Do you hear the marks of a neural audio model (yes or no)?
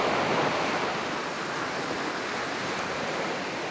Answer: no